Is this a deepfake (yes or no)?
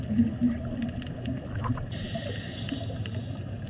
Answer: no